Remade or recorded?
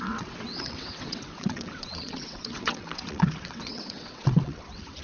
remade